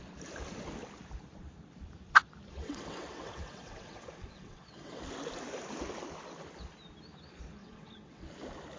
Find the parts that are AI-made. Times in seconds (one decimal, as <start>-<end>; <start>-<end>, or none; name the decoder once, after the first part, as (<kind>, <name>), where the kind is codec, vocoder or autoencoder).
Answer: 2.5-5.0 (vocoder, WaveNeXt); 7.6-8.2